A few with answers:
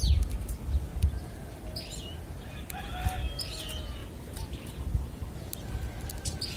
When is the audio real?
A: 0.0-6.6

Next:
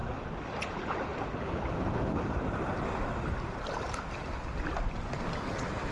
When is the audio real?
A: 0.0-5.9

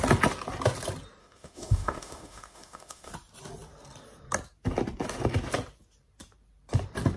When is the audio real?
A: 0.0-1.2; 3.1-7.2

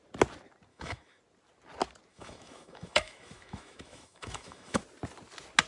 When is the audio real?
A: 0.0-0.7; 1.2-2.1; 4.8-5.7

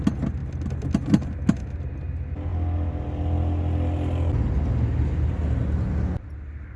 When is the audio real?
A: 0.0-6.8

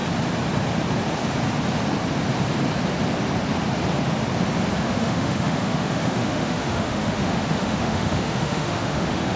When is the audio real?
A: 0.0-4.8